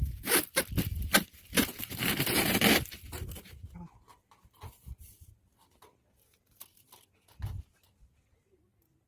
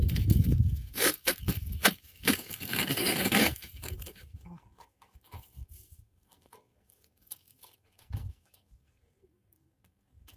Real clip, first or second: first